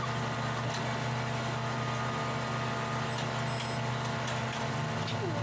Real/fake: real